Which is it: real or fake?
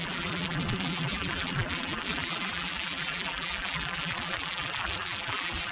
fake